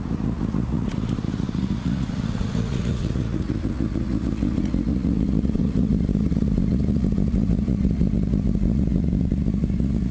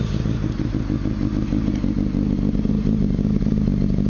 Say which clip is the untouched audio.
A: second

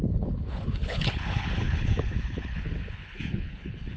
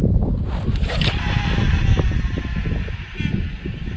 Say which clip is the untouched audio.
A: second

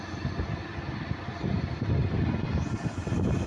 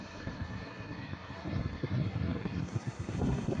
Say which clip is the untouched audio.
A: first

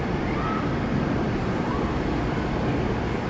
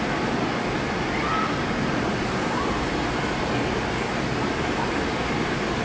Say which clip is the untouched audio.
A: second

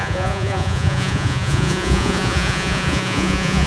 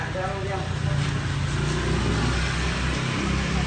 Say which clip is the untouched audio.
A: second